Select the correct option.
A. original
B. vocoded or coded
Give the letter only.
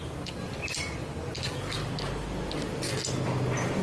A